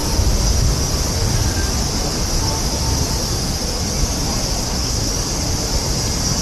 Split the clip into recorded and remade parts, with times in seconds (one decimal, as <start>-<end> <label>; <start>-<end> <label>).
0.0-4.6 recorded; 4.6-5.1 remade; 5.1-6.4 recorded